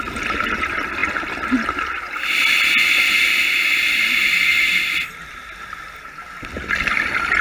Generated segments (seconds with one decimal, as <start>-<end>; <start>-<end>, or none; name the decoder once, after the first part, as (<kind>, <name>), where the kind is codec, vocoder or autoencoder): none

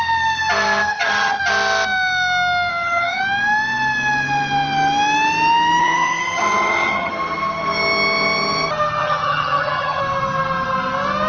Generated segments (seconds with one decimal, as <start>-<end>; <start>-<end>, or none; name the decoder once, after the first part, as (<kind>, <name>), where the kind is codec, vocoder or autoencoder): 0.9-1.4 (vocoder, HiFi-GAN); 2.7-3.2; 5.8-7.1; 9.0-10.0

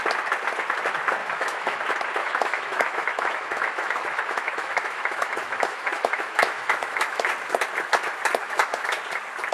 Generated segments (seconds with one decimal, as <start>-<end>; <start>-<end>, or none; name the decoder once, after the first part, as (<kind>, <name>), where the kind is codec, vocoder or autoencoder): 1.2-1.8 (autoencoder, DAC-VAE); 2.2-7.3; 8.4-9.0

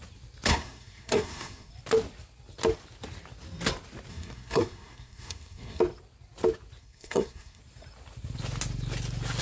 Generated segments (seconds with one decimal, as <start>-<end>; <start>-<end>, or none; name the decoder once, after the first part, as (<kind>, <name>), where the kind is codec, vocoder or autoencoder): 0.5-1.7 (codec, SNAC); 4.1-5.8; 6.8-7.6

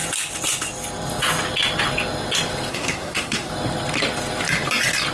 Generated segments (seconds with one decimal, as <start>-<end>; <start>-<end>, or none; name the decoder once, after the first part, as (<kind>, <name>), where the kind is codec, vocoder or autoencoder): 2.7-3.5 (codec, SNAC)